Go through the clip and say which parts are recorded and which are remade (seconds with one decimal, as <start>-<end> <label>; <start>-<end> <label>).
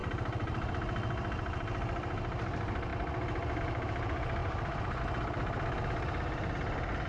0.0-0.7 remade; 0.7-4.4 recorded; 4.4-5.0 remade; 5.0-7.1 recorded